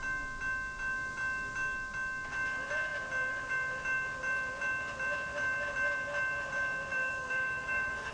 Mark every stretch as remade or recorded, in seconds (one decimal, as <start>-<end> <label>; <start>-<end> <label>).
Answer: 0.0-6.9 recorded; 6.9-8.1 remade